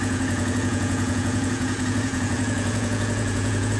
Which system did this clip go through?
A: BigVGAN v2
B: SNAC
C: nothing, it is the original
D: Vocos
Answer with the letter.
D